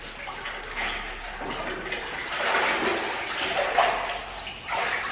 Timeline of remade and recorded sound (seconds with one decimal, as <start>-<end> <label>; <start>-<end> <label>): 0.0-5.1 recorded